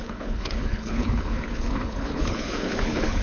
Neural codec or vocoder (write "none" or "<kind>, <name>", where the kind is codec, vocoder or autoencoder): codec, HILCodec